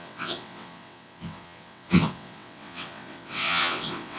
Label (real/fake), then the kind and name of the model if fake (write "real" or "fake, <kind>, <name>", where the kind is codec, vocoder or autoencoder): fake, vocoder, WaveNeXt